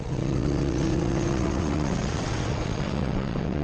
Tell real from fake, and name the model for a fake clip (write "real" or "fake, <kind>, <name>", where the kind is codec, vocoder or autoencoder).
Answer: fake, vocoder, WaveNeXt